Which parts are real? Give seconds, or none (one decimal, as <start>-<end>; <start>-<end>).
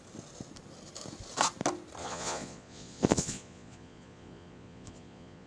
0.0-2.0